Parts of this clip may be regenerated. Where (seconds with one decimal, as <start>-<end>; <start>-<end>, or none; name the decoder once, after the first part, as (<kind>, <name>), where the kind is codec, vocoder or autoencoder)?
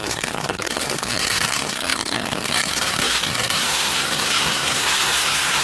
0.0-5.6 (codec, SNAC)